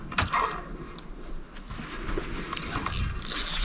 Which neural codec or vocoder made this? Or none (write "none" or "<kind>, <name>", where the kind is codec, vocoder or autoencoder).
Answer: none